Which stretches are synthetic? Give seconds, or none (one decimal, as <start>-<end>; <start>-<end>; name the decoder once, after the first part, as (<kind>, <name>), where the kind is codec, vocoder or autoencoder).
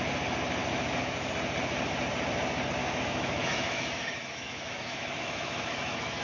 0.6-1.3 (autoencoder, DAC-VAE); 2.8-6.2